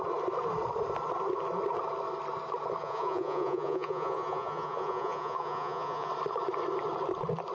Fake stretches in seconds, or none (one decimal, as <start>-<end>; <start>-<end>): 2.8-6.1